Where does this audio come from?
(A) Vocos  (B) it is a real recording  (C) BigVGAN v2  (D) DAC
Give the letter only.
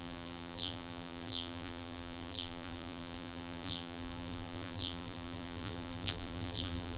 C